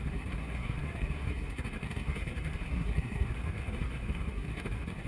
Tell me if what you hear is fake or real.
fake